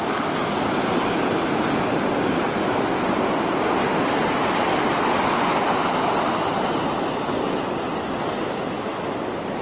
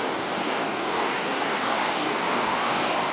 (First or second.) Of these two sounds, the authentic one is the first